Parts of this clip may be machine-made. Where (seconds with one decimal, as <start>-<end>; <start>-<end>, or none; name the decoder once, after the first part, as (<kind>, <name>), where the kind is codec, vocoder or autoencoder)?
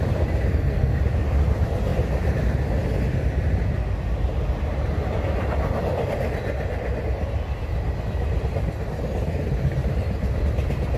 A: 0.5-1.0 (codec, SNAC)